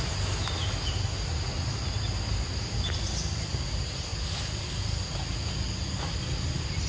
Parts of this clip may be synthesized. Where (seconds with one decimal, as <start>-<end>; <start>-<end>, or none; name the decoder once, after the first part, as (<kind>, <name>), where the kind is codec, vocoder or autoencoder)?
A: none